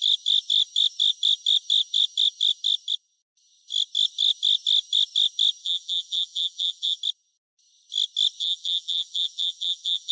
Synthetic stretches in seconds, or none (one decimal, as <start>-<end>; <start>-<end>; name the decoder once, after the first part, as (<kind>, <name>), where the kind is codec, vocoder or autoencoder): 5.6-7.0 (vocoder, BigVGAN v2); 8.4-10.1